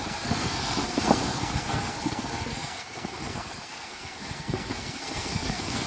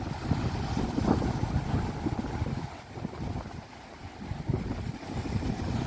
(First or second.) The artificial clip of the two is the first